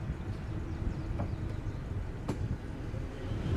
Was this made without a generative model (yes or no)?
yes